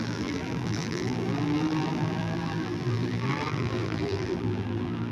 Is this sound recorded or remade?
remade